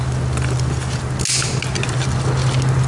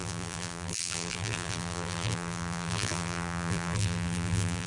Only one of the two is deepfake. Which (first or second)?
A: second